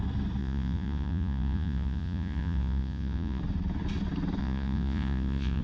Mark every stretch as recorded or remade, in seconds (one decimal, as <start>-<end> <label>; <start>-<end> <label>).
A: 0.0-0.4 recorded; 0.4-3.4 remade; 3.4-4.4 recorded; 4.4-5.6 remade